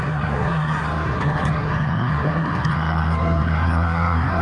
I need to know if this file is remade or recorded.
remade